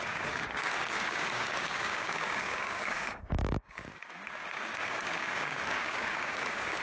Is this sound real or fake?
fake